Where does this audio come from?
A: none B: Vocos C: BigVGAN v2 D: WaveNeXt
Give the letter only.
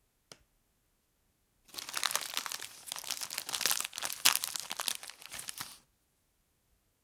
A